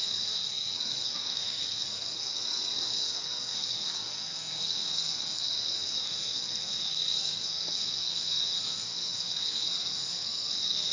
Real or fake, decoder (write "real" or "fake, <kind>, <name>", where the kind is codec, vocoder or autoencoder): fake, codec, SNAC